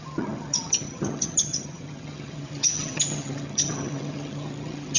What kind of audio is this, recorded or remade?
remade